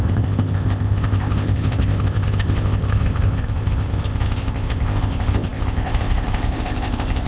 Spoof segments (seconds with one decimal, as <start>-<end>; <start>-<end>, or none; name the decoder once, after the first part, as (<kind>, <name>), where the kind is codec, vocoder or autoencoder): 0.0-7.3 (codec, ZipCodec)